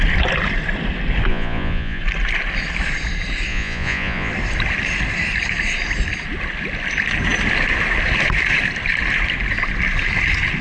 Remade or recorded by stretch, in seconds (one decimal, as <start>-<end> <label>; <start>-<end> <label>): 0.0-1.3 recorded; 1.3-2.0 remade; 2.0-3.5 recorded; 3.5-4.3 remade; 4.3-10.6 recorded